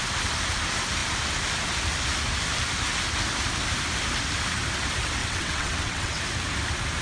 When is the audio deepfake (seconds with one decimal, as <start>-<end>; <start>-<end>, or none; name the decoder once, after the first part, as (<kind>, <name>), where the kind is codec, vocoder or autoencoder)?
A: 5.2-6.2 (vocoder, WaveNeXt)